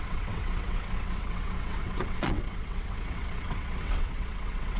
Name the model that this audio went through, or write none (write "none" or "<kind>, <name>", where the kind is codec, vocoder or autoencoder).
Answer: vocoder, WaveNeXt